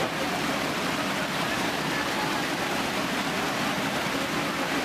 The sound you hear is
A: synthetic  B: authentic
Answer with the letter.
B